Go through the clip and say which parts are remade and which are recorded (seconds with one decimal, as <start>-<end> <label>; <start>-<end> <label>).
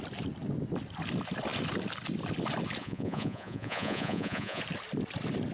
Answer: 0.0-2.8 recorded; 2.8-4.6 remade; 4.6-5.5 recorded